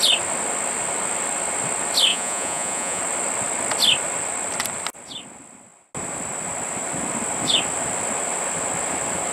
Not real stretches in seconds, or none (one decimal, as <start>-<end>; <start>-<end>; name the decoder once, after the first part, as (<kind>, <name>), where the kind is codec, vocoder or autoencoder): 2.1-3.0 (vocoder, Vocos)